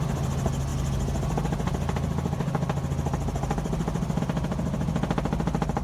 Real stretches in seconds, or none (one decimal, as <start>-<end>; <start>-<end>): 0.0-5.8